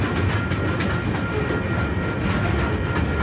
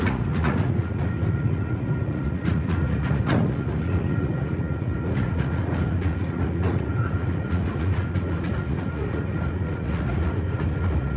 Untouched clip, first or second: first